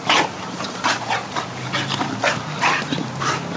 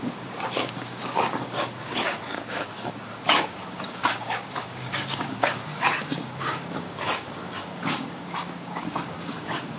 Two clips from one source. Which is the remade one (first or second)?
second